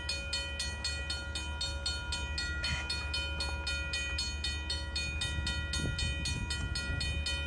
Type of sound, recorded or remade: recorded